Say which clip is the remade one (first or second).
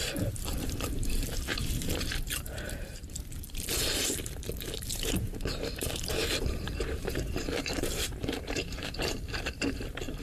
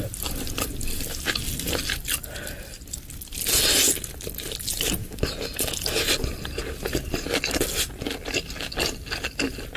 first